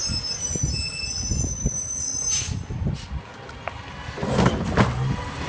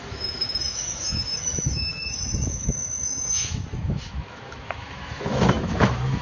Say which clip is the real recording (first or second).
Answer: first